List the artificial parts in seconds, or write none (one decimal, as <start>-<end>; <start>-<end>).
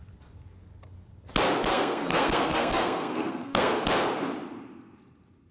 1.7-3.8